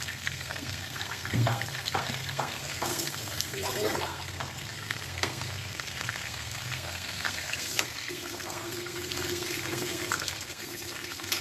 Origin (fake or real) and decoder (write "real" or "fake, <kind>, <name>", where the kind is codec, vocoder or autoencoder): fake, codec, SNAC